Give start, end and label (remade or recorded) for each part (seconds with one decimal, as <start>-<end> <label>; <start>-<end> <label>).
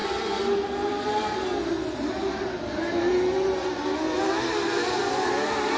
0.0-5.8 recorded